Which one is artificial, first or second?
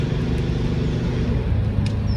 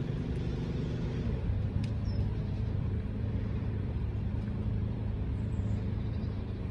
second